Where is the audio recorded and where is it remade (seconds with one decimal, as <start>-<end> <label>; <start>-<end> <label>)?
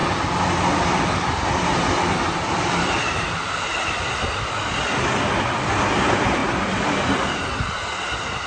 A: 0.0-8.5 recorded